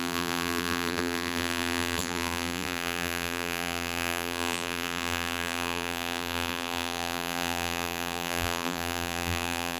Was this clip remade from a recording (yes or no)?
yes